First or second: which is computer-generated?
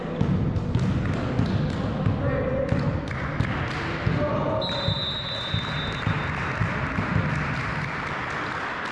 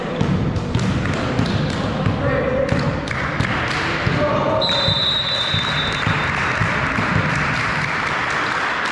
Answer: second